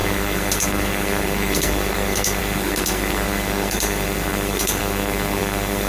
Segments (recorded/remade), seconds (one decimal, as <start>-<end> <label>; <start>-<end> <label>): 0.0-5.9 remade